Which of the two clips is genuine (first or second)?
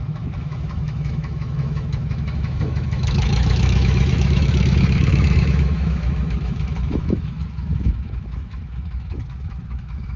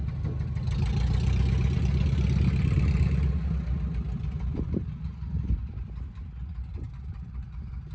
second